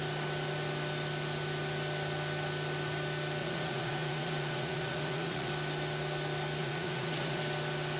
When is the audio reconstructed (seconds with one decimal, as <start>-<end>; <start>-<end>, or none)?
3.4-5.5; 6.6-7.4